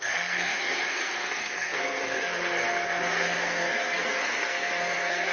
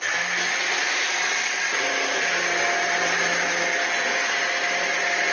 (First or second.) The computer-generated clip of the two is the first